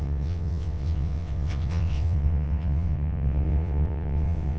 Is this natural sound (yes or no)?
no